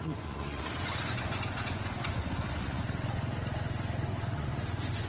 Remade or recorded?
remade